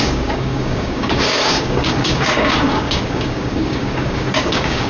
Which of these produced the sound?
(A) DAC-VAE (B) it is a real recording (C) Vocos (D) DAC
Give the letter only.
D